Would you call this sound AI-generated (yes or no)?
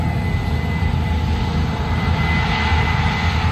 no